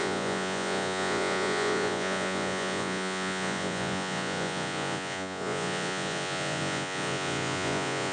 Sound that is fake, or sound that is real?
fake